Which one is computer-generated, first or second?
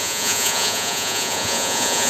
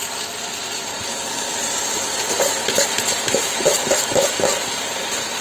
first